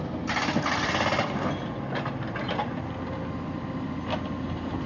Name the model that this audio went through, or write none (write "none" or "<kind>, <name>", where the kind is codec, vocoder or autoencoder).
none